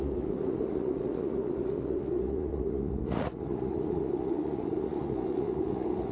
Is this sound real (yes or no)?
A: no